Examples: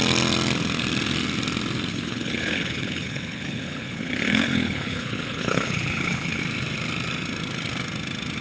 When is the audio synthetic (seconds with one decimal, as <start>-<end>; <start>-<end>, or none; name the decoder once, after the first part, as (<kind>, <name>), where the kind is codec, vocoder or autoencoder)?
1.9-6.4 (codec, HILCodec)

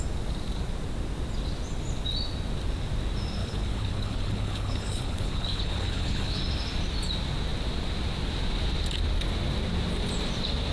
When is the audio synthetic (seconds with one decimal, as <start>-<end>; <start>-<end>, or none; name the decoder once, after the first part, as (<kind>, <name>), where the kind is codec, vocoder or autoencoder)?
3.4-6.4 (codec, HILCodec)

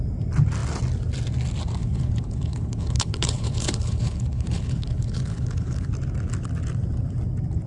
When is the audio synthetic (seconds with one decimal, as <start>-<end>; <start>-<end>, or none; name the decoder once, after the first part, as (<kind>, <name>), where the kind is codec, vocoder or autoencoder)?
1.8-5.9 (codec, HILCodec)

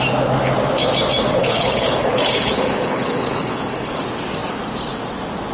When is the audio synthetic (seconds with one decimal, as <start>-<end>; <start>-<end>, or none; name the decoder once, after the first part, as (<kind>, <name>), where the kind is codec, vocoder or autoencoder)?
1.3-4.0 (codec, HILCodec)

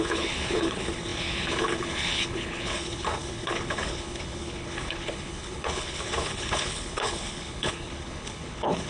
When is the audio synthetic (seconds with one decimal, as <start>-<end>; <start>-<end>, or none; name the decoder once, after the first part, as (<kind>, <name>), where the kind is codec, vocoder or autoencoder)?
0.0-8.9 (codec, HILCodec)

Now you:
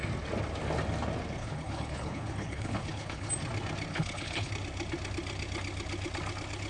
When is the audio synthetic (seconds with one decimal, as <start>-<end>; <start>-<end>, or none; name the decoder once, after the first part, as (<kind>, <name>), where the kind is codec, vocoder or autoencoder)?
1.4-3.3 (codec, HILCodec); 3.9-4.5

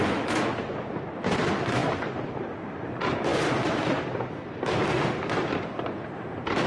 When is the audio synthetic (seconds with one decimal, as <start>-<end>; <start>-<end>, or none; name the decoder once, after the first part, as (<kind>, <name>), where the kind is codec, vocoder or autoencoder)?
none

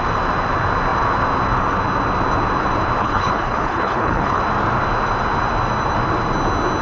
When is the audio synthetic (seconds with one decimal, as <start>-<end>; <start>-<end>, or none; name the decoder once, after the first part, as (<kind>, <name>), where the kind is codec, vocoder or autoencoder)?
3.0-4.4 (codec, HILCodec)